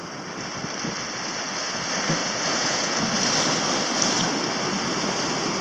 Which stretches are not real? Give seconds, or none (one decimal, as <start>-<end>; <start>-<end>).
2.2-3.0